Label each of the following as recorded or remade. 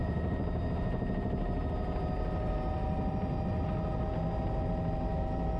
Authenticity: recorded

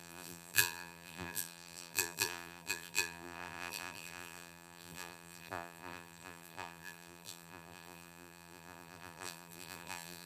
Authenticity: remade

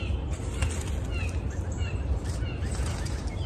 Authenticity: recorded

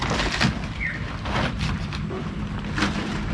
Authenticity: recorded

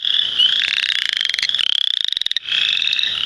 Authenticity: recorded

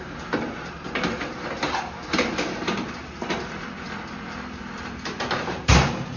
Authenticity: remade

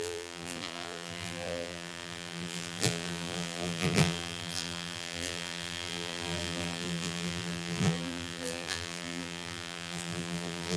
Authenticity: remade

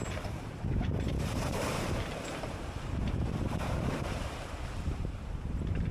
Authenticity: remade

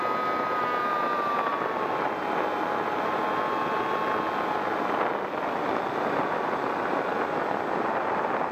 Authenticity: recorded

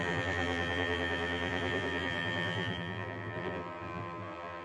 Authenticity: remade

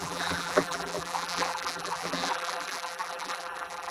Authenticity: remade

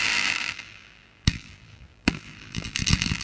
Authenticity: remade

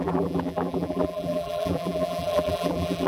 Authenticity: remade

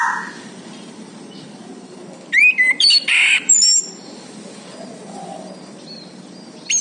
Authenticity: remade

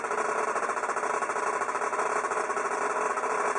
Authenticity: remade